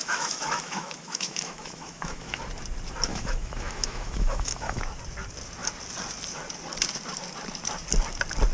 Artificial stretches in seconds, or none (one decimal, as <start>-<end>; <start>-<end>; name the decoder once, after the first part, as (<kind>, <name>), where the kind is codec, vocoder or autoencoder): 0.0-2.4 (autoencoder, DAC-VAE); 3.1-4.8